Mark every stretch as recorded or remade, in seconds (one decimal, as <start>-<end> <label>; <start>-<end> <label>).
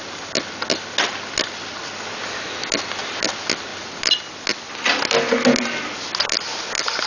0.0-7.1 recorded